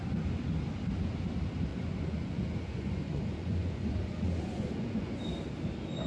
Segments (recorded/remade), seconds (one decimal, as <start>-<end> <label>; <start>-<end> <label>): 0.0-1.7 recorded; 1.7-5.2 remade; 5.2-6.1 recorded